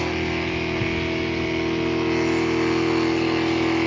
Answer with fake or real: real